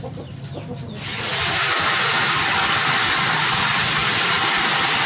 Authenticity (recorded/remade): recorded